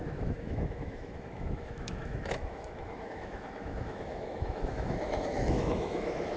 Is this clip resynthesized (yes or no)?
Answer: yes